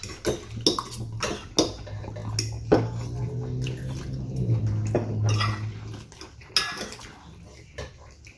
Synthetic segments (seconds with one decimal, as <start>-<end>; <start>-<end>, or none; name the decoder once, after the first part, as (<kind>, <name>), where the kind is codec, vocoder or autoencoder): none